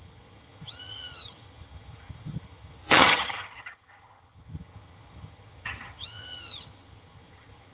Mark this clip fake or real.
fake